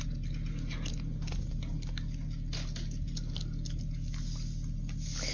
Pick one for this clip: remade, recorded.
recorded